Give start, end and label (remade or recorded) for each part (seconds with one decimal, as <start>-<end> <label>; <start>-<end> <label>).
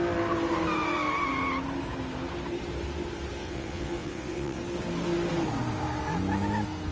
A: 0.0-3.4 recorded; 3.4-4.6 remade; 4.6-6.9 recorded